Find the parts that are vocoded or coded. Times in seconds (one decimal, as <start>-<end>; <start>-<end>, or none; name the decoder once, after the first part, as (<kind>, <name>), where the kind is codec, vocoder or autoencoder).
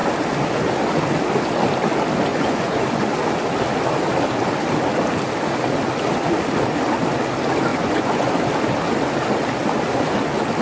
2.3-3.1 (vocoder, Vocos); 7.7-8.3